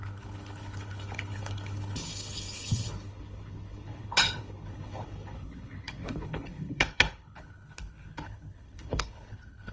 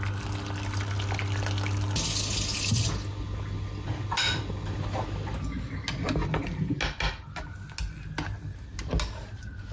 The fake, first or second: first